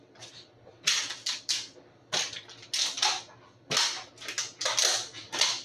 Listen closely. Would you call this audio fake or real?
real